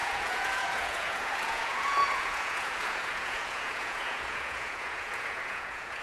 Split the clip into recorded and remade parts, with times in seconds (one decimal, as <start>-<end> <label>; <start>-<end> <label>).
0.0-6.0 remade